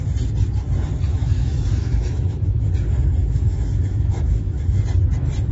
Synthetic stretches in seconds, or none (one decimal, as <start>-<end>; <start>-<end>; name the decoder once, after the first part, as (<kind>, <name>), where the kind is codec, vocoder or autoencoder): 1.1-2.7 (autoencoder, DAC-VAE); 3.2-4.8